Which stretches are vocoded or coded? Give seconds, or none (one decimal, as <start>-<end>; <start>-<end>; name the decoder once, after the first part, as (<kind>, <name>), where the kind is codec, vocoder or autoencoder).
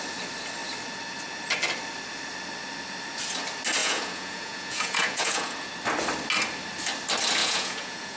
3.8-5.7 (vocoder, Vocos); 7.4-8.2